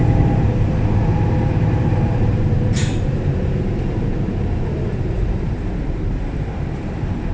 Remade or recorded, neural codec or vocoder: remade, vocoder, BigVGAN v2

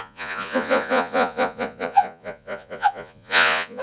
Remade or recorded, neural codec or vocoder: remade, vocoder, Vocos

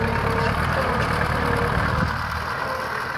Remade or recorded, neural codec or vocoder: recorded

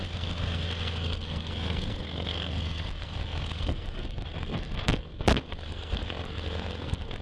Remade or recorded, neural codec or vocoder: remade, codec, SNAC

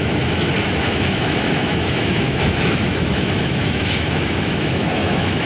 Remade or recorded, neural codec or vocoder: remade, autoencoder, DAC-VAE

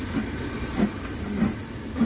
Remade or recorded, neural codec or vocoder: recorded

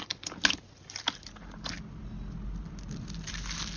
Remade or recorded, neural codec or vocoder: recorded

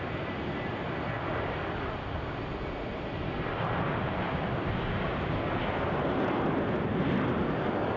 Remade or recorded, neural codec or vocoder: recorded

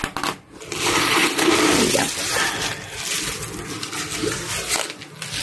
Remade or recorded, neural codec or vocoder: recorded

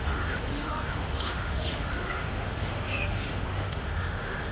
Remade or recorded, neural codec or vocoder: remade, autoencoder, DAC-VAE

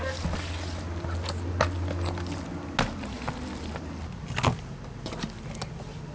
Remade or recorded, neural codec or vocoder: recorded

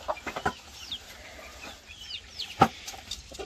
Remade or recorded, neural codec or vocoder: remade, vocoder, BigVGAN v2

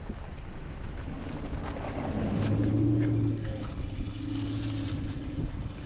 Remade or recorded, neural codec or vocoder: recorded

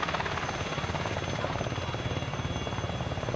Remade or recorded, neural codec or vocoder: recorded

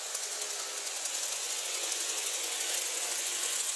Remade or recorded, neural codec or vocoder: remade, vocoder, Vocos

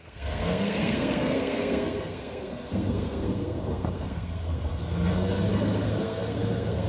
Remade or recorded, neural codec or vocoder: remade, codec, SNAC